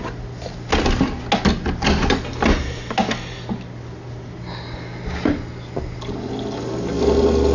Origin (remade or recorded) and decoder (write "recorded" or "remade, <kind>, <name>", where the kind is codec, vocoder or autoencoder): recorded